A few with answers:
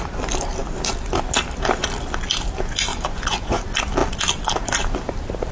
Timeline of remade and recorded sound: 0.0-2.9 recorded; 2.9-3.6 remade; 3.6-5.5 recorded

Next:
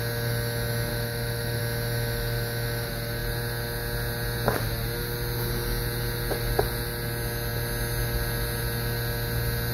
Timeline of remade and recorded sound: 0.0-0.9 recorded; 0.9-1.6 remade; 1.6-9.7 recorded

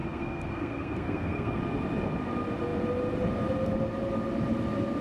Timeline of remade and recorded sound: 0.0-1.6 remade; 1.6-5.0 recorded

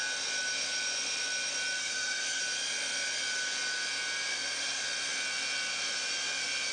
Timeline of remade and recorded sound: 0.0-1.8 recorded; 1.8-2.4 remade; 2.4-4.3 recorded; 4.3-4.8 remade; 4.8-6.7 recorded

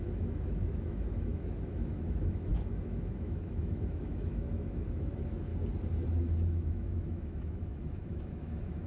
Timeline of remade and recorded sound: 0.0-5.5 remade; 5.5-6.1 recorded; 6.1-8.9 remade

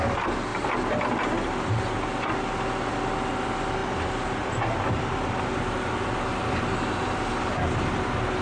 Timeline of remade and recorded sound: 0.0-8.4 recorded

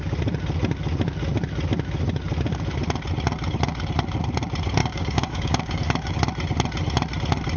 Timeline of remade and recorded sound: 0.0-4.8 recorded; 4.8-6.2 remade; 6.2-7.6 recorded

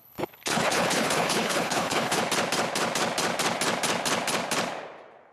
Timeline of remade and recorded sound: 0.0-2.2 remade; 2.2-5.3 recorded